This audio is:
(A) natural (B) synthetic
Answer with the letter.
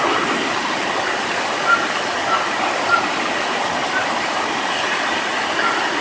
A